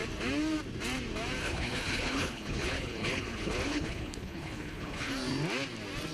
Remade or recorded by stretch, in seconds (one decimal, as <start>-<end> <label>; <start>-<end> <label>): 0.0-1.4 recorded; 1.4-5.1 remade; 5.1-6.1 recorded